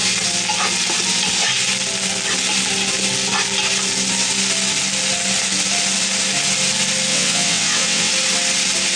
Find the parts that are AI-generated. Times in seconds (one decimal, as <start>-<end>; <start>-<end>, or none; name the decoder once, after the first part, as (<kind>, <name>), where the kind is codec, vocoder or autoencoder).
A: 7.1-8.1 (vocoder, WaveNeXt)